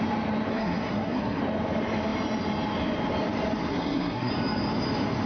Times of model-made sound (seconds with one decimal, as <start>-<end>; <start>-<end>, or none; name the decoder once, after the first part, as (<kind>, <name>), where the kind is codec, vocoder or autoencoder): 0.5-1.4 (codec, SNAC); 3.7-4.3